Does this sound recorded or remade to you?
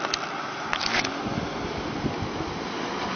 recorded